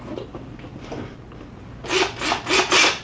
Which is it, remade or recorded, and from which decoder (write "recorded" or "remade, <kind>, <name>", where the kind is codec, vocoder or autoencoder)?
recorded